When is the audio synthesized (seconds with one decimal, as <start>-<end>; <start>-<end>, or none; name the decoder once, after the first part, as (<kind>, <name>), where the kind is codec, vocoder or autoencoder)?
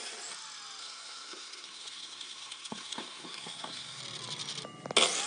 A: 0.8-4.0 (codec, SNAC)